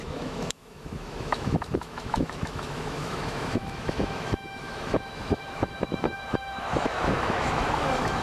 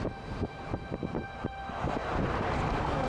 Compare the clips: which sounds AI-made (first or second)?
first